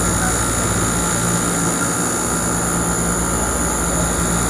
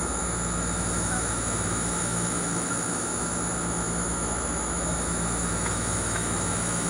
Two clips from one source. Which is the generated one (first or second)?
second